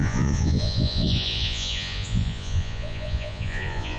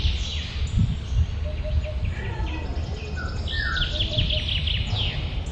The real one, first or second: second